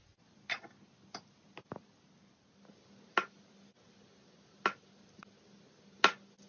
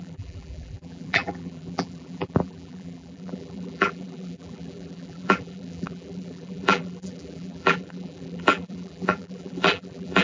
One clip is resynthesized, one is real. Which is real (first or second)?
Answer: first